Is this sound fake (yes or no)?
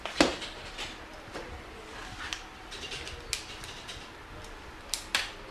no